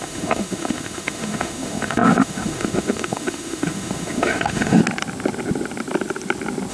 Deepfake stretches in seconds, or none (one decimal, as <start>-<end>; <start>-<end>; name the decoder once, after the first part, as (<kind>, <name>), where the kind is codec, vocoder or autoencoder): 0.0-4.8 (autoencoder, DAC-VAE)

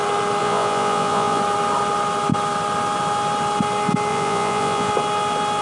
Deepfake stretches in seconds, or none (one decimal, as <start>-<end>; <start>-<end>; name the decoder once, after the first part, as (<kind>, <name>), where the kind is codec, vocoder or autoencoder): 0.4-1.4 (vocoder, Vocos); 4.1-4.9

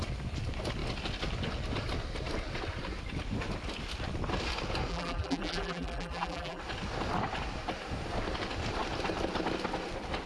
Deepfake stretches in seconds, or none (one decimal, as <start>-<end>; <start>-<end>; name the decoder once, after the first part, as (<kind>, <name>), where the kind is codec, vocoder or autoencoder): 4.9-6.6 (vocoder, BigVGAN v2)